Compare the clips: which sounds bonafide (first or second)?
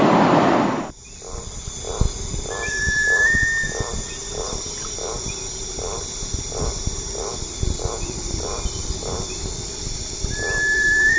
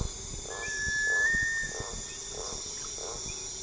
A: second